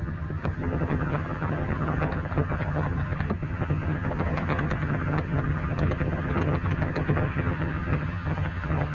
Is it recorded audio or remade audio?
remade